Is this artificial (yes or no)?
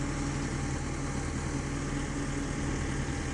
no